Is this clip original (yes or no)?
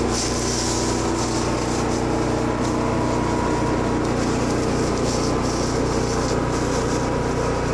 yes